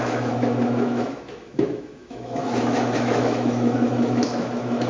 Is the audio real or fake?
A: fake